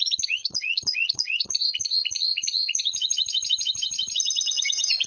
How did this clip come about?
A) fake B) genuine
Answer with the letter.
A